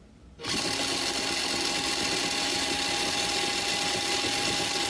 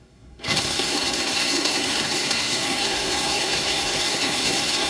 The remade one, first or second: second